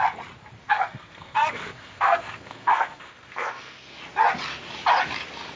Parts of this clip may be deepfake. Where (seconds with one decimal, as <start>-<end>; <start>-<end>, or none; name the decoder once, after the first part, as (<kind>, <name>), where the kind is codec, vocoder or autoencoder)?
0.6-4.0 (codec, SNAC)